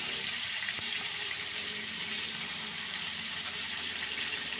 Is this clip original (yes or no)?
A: no